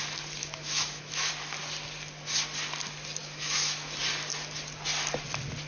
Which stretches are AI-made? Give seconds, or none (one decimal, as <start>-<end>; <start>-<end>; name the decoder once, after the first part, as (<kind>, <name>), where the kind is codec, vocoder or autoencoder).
0.4-1.3 (autoencoder, DAC-VAE); 3.2-4.0